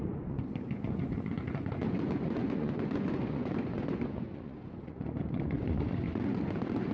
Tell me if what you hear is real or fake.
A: fake